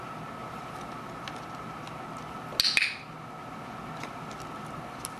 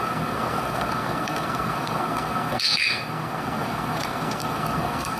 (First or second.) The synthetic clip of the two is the second